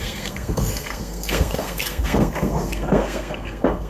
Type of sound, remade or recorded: remade